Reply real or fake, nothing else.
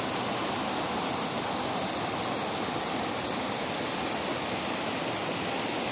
real